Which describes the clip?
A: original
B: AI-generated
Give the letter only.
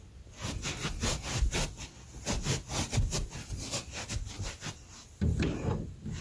A